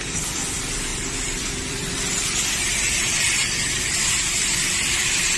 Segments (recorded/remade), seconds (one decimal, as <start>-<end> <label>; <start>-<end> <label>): 0.0-5.4 remade